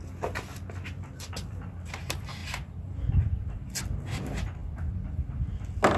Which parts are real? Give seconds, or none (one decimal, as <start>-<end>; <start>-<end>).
0.0-6.0